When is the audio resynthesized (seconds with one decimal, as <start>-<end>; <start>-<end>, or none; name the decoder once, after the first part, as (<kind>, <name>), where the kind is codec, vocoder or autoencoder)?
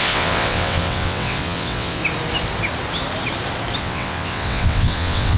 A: 0.0-2.0 (vocoder, WaveNeXt); 3.8-5.4